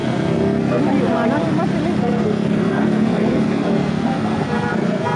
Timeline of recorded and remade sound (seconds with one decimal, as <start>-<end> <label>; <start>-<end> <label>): 0.0-0.8 remade; 0.8-2.0 recorded; 2.0-5.2 remade